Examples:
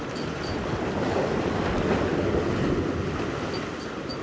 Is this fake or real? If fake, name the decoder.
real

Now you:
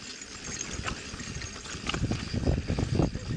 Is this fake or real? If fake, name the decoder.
real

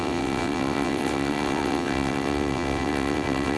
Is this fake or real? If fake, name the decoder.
fake, vocoder, WaveNeXt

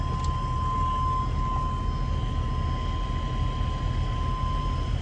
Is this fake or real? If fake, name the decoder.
real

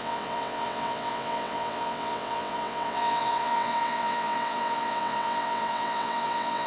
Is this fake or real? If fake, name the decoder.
fake, vocoder, WaveNeXt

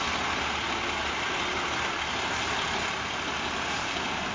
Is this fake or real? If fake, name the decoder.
real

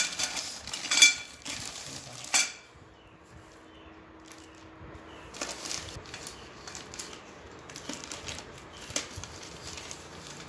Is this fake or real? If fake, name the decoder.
real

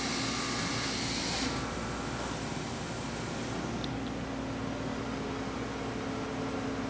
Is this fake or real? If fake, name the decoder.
real